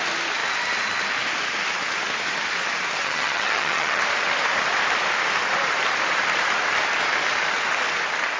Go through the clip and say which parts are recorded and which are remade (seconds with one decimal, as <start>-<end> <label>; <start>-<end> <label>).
0.0-3.0 recorded; 3.0-4.0 remade; 4.0-8.4 recorded